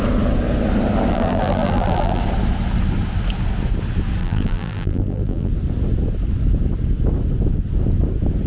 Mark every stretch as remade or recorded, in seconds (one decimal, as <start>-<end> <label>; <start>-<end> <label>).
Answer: 0.0-1.1 recorded; 1.1-2.2 remade; 2.2-4.2 recorded; 4.2-5.5 remade; 5.5-8.5 recorded